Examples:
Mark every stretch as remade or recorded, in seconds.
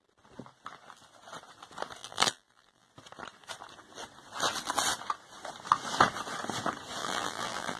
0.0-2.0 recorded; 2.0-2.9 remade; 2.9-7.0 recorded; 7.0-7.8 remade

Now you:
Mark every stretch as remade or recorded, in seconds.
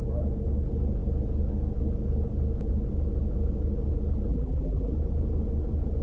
0.0-4.3 recorded; 4.3-4.9 remade; 4.9-6.0 recorded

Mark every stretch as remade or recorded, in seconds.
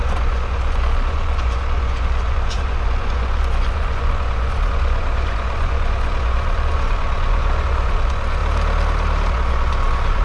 0.0-8.4 remade; 8.4-9.3 recorded; 9.3-10.2 remade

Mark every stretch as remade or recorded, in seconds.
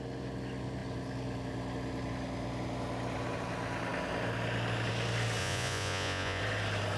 0.0-5.4 recorded; 5.4-6.4 remade; 6.4-7.0 recorded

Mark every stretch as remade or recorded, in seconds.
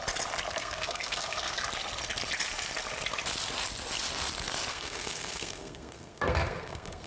0.0-0.6 recorded; 0.6-1.6 remade; 1.6-4.7 recorded; 4.7-7.1 remade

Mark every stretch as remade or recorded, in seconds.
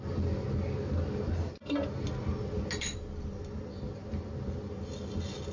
0.0-5.5 recorded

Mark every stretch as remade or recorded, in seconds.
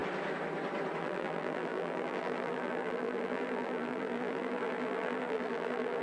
0.0-1.0 recorded; 1.0-6.0 remade